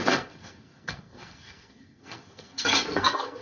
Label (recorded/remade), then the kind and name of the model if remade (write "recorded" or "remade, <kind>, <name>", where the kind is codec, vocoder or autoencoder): remade, codec, SNAC